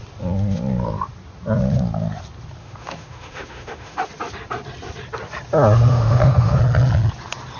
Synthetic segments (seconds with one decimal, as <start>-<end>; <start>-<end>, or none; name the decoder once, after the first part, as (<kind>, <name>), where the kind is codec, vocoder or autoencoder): 2.6-4.1 (autoencoder, DAC-VAE); 5.9-6.6